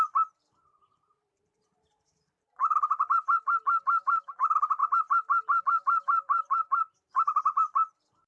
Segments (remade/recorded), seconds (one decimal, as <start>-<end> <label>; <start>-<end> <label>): 0.0-4.8 remade; 4.8-5.6 recorded; 5.6-8.3 remade